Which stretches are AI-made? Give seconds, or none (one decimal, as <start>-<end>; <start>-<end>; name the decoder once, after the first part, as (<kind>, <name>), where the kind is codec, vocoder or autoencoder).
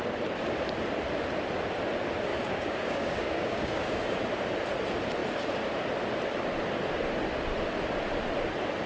2.3-4.1 (codec, DAC)